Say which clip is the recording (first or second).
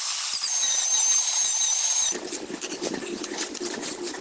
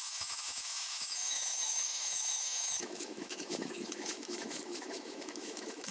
first